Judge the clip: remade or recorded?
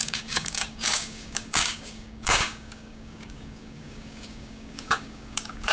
remade